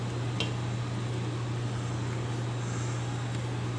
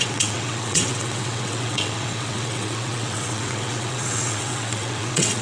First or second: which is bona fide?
first